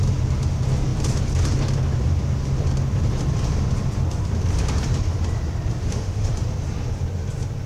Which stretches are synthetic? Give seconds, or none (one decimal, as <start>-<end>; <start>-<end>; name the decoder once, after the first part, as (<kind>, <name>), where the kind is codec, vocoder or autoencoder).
5.8-6.3 (autoencoder, DAC-VAE)